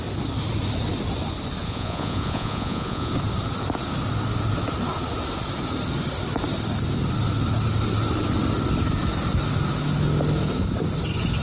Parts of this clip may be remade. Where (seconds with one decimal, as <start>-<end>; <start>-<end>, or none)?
1.6-3.1